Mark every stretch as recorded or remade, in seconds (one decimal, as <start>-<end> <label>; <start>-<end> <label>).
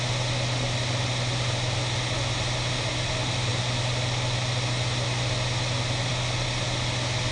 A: 0.0-7.3 recorded